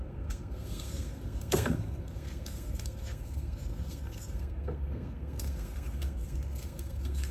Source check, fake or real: fake